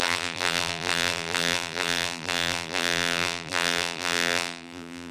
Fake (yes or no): yes